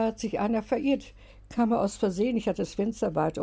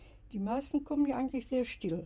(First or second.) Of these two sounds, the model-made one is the second